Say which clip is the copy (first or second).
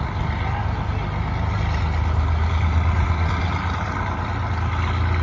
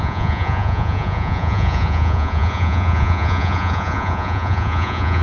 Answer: second